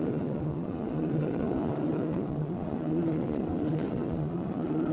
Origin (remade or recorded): remade